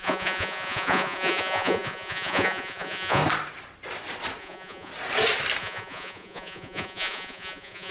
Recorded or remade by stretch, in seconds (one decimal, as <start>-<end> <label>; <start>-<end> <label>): 0.0-3.2 remade; 3.2-4.4 recorded; 4.4-4.9 remade; 4.9-5.6 recorded; 5.6-7.9 remade